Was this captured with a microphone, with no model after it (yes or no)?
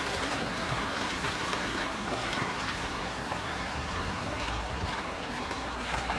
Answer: no